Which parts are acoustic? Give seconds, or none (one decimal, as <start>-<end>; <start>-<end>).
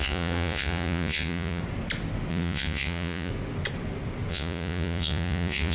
1.6-2.3; 3.3-4.3